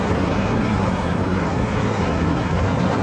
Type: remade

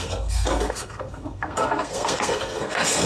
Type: remade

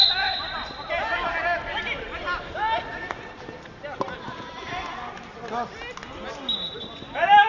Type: recorded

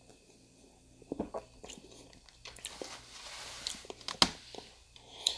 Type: recorded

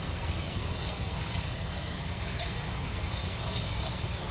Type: remade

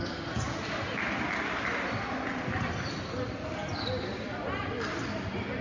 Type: recorded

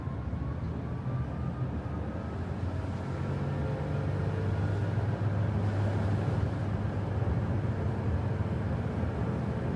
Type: recorded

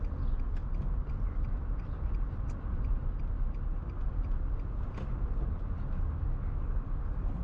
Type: recorded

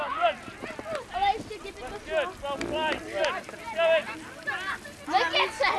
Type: recorded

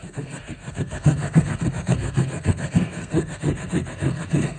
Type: remade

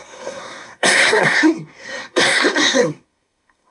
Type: remade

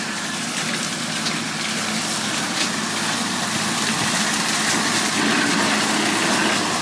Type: recorded